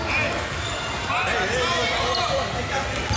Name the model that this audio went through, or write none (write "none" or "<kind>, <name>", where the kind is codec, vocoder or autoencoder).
none